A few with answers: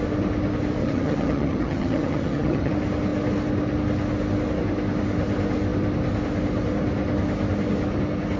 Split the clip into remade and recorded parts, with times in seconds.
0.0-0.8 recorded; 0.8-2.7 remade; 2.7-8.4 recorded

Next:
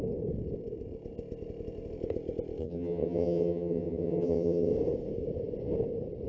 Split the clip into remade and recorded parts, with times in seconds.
0.0-2.6 recorded; 2.6-4.7 remade; 4.7-6.3 recorded

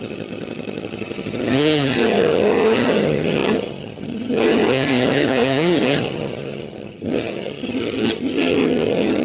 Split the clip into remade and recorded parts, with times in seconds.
0.0-9.2 remade

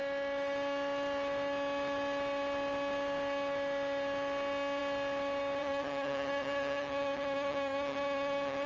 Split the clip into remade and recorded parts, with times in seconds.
0.0-5.6 recorded; 5.6-8.7 remade